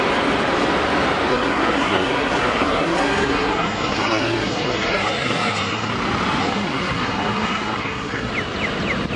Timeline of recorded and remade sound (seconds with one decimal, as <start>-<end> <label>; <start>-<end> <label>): 0.0-1.3 recorded; 1.3-5.9 remade; 5.9-6.4 recorded; 6.4-8.3 remade; 8.3-9.2 recorded